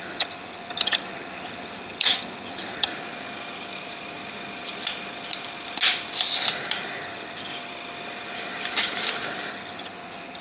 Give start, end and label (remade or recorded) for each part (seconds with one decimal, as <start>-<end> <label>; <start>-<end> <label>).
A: 0.0-2.9 remade; 2.9-7.0 recorded; 7.0-7.5 remade; 7.5-9.5 recorded; 9.5-10.4 remade